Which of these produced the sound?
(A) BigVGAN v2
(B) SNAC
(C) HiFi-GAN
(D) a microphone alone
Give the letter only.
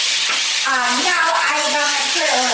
C